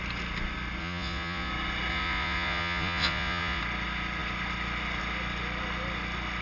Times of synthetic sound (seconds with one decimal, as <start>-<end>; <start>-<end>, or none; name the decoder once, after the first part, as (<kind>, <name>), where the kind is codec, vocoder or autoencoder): 0.8-1.5 (vocoder, Vocos); 1.9-3.6